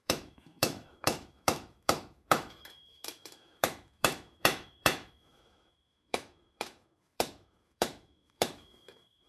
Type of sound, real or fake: fake